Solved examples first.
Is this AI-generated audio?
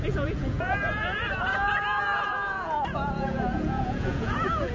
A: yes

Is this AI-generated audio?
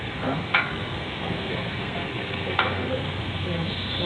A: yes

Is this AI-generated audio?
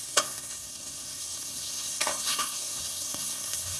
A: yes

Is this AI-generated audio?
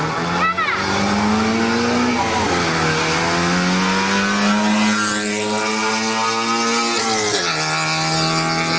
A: no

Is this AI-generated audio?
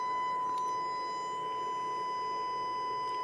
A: no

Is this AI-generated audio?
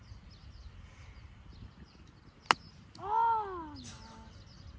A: no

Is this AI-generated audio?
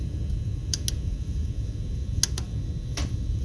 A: no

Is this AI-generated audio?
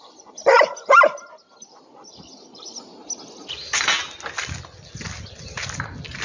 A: no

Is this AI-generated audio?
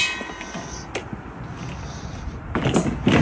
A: no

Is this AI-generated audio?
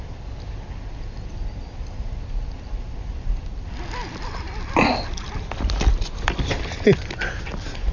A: no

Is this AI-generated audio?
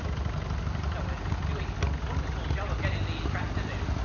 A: no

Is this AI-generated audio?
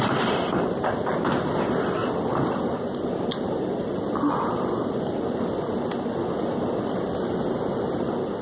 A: no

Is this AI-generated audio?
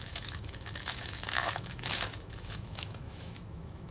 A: yes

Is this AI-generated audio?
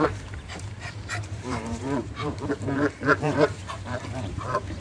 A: yes